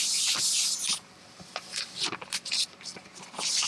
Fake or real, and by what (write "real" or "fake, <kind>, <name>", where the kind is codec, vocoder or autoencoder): real